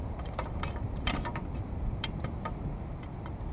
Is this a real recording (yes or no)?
no